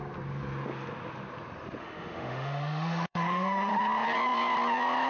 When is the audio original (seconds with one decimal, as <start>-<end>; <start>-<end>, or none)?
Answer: 0.0-1.8; 3.7-5.1